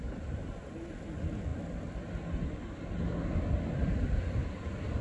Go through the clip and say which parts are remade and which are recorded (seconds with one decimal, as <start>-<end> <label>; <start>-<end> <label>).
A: 0.0-5.0 recorded